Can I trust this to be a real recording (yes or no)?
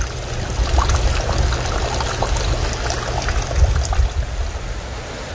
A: yes